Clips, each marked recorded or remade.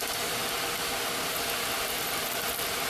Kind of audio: recorded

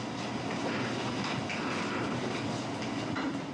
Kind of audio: recorded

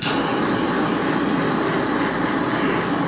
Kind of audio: recorded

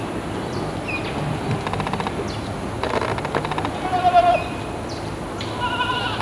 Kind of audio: recorded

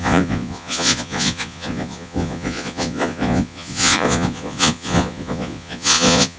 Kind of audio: remade